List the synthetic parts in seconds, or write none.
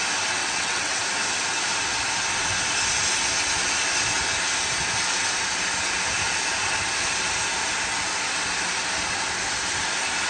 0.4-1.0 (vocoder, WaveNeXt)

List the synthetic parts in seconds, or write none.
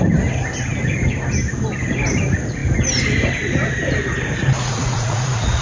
4.6-5.6 (vocoder, Vocos)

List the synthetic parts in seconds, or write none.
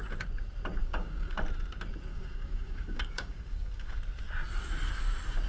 0.8-1.4 (codec, DAC); 2.1-4.0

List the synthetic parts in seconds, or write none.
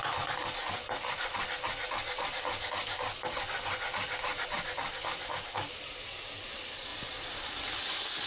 none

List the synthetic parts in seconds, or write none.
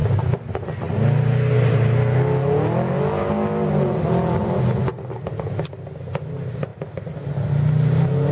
none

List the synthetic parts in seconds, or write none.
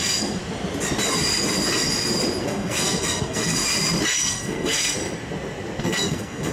0.0-0.4 (codec, SNAC); 2.4-3.6; 4.1-5.0; 5.8-6.5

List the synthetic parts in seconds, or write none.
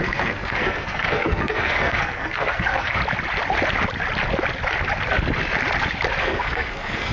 0.0-3.0 (codec, SNAC); 6.2-7.1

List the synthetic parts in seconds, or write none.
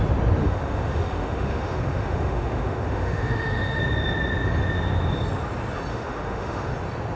0.4-3.8 (autoencoder, DAC-VAE); 5.9-6.7